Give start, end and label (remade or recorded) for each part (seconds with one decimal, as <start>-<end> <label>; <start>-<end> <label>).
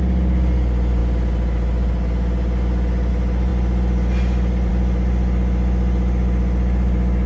0.0-7.3 recorded